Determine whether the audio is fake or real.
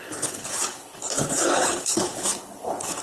fake